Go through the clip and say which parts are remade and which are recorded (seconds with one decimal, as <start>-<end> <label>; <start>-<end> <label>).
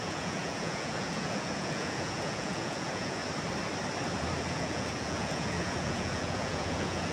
0.0-3.2 remade; 3.2-4.4 recorded; 4.4-7.1 remade